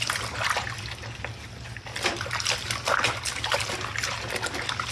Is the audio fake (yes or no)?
no